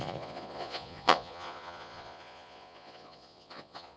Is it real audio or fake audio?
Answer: fake